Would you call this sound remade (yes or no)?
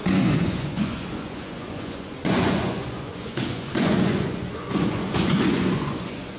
yes